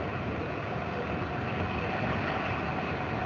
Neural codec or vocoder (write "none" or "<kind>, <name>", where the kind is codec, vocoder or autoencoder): none